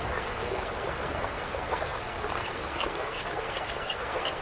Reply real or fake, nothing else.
fake